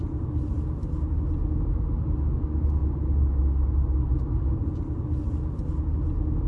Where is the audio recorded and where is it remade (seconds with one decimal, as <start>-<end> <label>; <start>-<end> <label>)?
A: 0.0-6.5 recorded